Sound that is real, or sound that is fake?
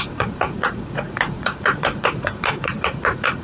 fake